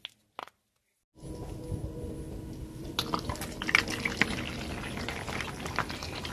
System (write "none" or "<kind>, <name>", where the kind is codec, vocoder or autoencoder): none